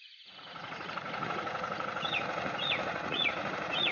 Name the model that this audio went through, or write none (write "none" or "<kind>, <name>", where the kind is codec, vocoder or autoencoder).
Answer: vocoder, Vocos